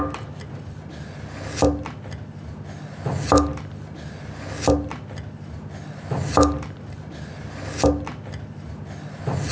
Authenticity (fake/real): real